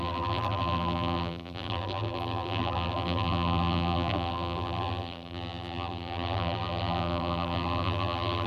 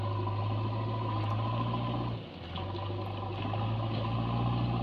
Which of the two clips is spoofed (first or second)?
first